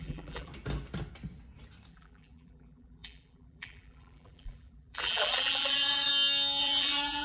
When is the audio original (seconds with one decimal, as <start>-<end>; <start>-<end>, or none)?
0.5-1.9; 6.1-6.6